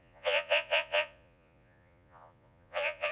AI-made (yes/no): yes